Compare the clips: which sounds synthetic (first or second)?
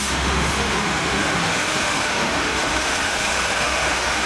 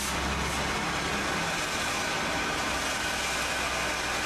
first